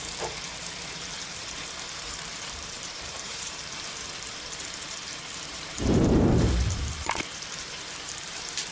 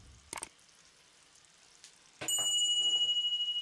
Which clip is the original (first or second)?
second